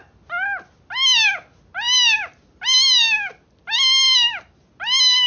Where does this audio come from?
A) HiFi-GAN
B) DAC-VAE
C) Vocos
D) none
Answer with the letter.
D